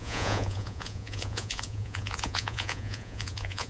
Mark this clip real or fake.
fake